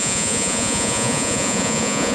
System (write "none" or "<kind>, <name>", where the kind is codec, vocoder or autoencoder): vocoder, Vocos